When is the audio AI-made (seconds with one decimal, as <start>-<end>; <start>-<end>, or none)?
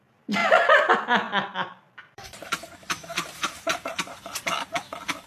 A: 0.4-0.9; 1.3-4.2